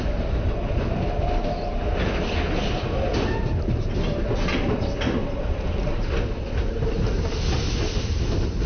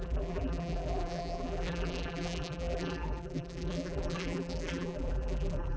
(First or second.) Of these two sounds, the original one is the first